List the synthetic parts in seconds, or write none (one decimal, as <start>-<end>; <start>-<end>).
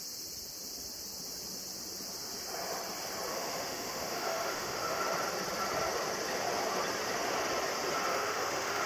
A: 3.3-5.0; 8.1-8.9